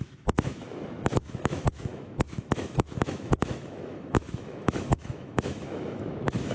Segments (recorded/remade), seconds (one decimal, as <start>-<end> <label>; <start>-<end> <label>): 0.0-6.5 remade